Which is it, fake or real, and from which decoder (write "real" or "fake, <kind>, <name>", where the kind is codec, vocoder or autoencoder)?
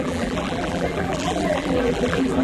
fake, vocoder, BigVGAN v2